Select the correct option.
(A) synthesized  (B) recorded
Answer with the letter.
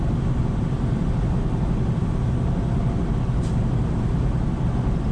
B